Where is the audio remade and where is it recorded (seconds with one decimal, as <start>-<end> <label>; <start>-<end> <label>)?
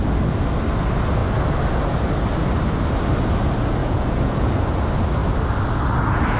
0.0-3.8 recorded; 3.8-4.5 remade; 4.5-6.4 recorded